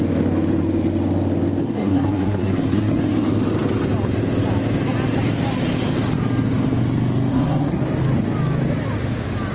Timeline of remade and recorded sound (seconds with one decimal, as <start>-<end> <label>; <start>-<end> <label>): 0.0-1.6 recorded; 1.6-3.0 remade; 3.0-7.3 recorded; 7.3-7.8 remade; 7.8-9.5 recorded